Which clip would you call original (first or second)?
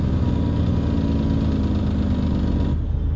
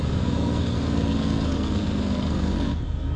first